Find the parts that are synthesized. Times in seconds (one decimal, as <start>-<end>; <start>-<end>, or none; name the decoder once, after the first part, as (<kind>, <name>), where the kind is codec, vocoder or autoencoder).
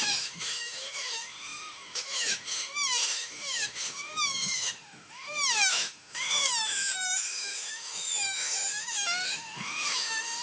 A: 0.0-10.4 (autoencoder, DAC-VAE)